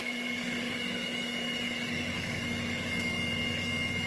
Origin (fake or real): fake